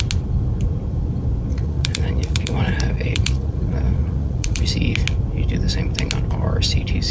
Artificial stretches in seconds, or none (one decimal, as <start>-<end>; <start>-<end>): 1.5-4.7